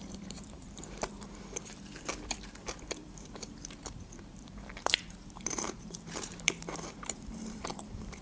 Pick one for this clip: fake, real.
fake